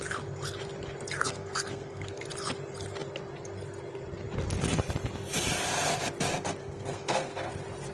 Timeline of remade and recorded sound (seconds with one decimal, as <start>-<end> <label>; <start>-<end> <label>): 0.0-1.2 recorded; 1.2-2.2 remade; 2.2-6.6 recorded; 6.6-7.5 remade; 7.5-7.9 recorded